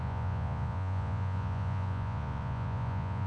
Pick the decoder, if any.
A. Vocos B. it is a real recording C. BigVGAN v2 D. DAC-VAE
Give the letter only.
A